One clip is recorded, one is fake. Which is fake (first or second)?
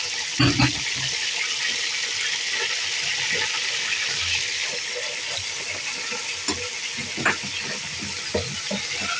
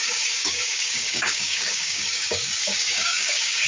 second